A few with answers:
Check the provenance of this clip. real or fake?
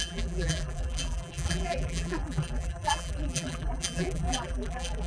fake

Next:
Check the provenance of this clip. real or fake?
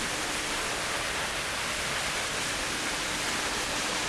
real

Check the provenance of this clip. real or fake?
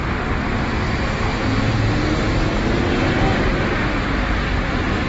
real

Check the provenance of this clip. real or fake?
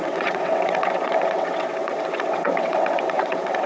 fake